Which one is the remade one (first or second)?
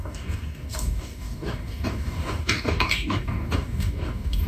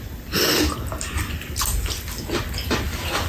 first